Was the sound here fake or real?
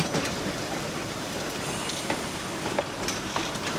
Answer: fake